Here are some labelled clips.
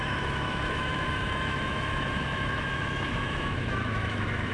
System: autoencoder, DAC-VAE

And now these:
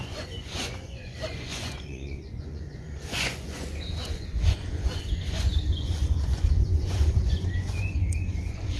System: vocoder, Vocos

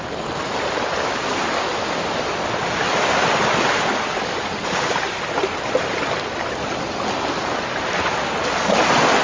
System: none